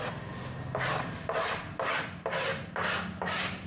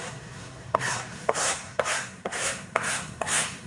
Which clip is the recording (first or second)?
first